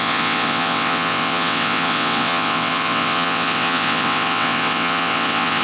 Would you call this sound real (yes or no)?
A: no